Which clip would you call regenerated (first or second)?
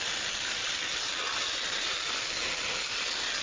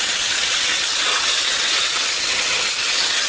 second